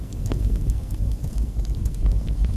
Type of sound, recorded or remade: remade